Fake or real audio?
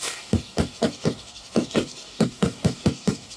fake